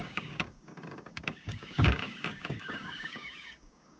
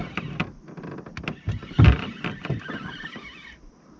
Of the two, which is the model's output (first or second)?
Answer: first